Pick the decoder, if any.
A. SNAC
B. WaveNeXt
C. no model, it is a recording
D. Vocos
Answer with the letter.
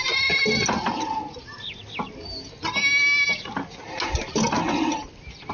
C